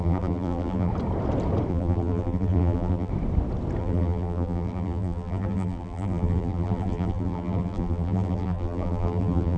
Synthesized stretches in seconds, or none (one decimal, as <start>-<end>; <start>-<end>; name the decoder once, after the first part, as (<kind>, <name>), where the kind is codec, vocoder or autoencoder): 0.0-0.9 (vocoder, BigVGAN v2); 1.7-3.1; 3.8-9.6